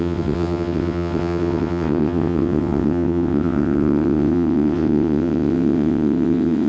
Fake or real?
fake